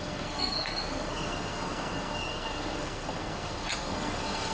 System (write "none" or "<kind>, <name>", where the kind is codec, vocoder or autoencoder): codec, SNAC